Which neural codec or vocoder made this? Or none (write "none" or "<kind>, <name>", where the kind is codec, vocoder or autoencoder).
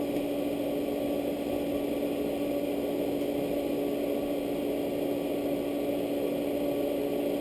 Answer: none